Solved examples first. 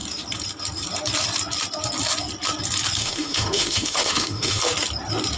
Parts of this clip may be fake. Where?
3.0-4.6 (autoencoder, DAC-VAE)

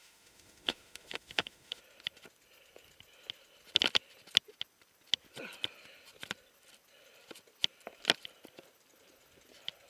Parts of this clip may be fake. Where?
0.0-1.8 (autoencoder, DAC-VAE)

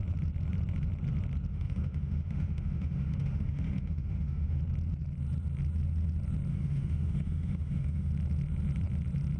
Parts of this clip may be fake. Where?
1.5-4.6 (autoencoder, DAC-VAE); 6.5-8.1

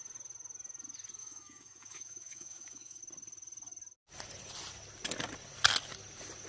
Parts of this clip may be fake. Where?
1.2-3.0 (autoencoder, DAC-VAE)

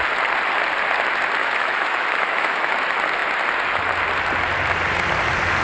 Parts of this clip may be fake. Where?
1.4-2.7 (autoencoder, DAC-VAE)